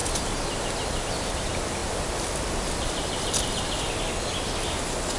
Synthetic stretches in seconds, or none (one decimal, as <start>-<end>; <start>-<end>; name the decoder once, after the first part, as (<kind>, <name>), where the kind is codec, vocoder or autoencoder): none